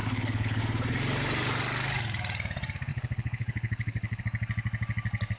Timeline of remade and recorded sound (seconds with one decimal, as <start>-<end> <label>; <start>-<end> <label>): 0.0-0.6 remade; 0.6-2.9 recorded; 2.9-4.2 remade; 4.2-5.4 recorded